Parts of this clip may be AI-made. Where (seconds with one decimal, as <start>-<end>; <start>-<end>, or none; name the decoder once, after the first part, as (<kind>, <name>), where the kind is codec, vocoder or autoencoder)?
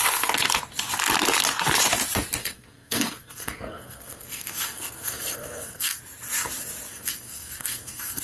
2.4-6.0 (codec, SNAC); 6.9-8.2